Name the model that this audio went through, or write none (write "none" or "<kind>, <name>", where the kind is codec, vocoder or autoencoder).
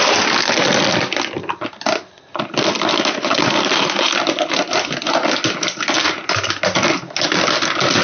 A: none